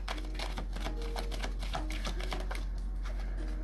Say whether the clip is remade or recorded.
recorded